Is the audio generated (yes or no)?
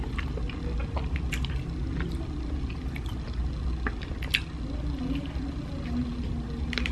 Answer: no